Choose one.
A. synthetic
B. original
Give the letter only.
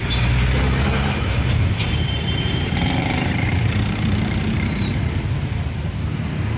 A